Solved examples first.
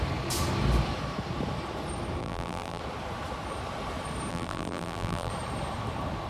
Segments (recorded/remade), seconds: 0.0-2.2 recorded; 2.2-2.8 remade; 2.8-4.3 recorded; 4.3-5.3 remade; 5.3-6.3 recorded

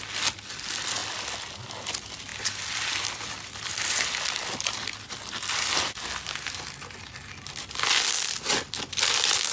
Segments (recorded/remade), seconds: 0.0-2.3 recorded; 2.3-5.7 remade; 5.7-9.5 recorded

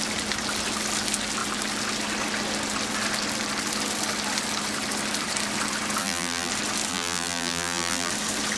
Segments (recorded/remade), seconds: 0.0-6.0 recorded; 6.0-6.5 remade; 6.5-6.9 recorded; 6.9-8.1 remade; 8.1-8.6 recorded